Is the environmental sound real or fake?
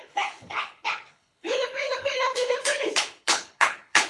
fake